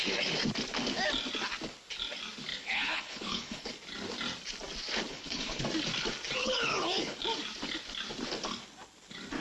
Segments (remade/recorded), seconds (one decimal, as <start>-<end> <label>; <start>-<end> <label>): 0.0-2.5 recorded; 2.5-3.7 remade; 3.7-5.1 recorded; 5.1-5.6 remade; 5.6-6.4 recorded; 6.4-7.2 remade; 7.2-9.4 recorded